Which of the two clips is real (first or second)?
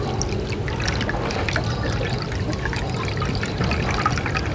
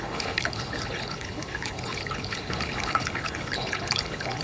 first